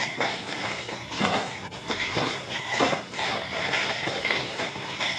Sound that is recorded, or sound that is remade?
remade